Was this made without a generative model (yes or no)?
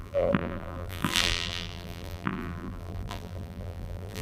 no